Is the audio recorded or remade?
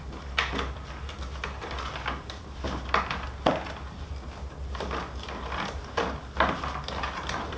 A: recorded